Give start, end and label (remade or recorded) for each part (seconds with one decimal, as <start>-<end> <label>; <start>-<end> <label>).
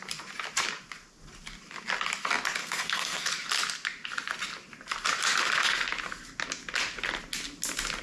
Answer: 0.0-2.6 recorded; 2.6-3.2 remade; 3.2-8.0 recorded